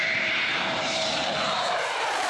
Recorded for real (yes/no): no